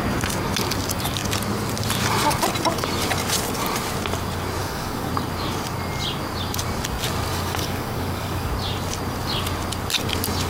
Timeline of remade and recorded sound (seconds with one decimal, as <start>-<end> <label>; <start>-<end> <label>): 0.0-4.6 recorded; 4.6-5.1 remade; 5.1-7.3 recorded; 7.3-8.5 remade; 8.5-10.5 recorded